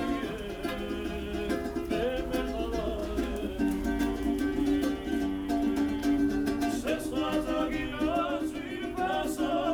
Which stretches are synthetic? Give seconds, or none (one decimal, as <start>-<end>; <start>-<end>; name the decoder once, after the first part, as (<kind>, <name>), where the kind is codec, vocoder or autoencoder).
3.0-3.8 (autoencoder, DAC-VAE)